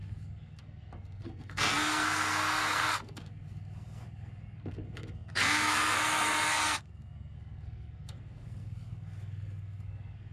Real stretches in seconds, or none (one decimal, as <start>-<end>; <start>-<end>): none